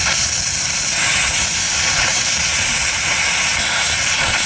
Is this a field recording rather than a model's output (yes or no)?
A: yes